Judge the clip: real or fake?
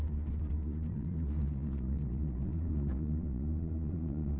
fake